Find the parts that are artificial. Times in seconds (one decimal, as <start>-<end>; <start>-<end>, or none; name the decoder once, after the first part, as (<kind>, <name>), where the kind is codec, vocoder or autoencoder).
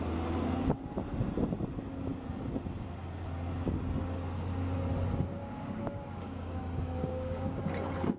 5.4-6.6 (codec, DAC); 7.0-7.6